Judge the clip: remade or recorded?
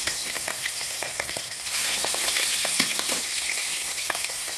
remade